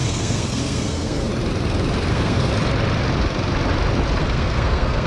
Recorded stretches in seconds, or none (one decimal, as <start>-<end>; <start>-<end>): 1.3-2.1; 2.5-4.2